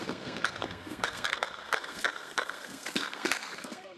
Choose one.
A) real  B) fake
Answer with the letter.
B